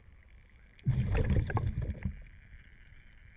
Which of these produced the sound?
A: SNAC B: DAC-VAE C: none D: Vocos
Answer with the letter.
C